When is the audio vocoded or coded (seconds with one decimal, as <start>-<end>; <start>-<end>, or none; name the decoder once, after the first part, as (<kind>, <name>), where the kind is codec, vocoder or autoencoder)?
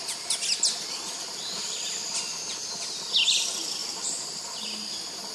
none